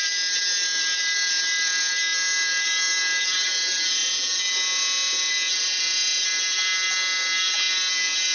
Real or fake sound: real